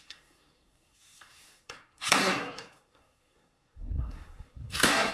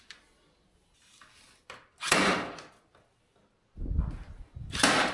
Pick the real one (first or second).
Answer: second